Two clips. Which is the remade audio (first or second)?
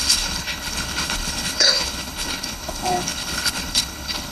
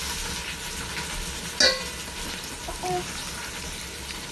first